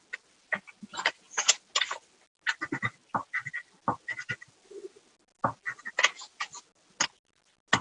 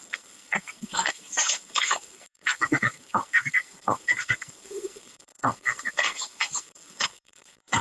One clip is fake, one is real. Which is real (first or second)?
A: first